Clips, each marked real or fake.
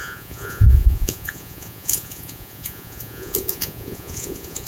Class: fake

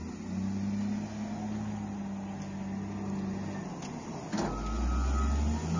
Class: real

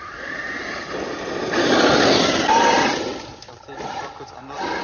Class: real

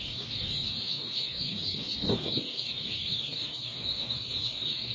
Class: fake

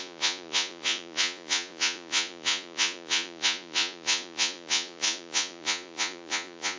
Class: fake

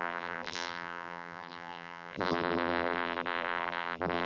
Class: fake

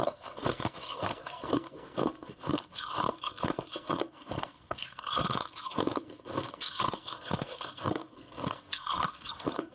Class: fake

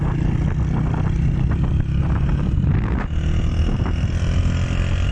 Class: real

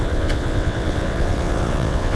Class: fake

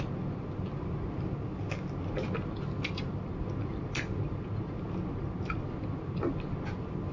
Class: real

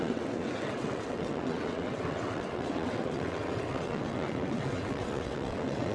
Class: fake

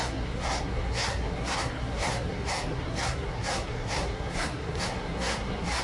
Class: fake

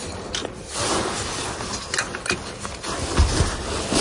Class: real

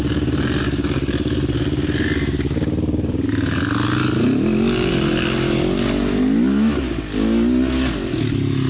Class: real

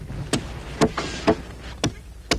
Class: real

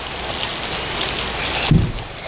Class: real